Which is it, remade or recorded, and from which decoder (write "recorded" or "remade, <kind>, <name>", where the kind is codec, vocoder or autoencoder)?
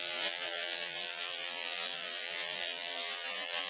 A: remade, vocoder, BigVGAN v2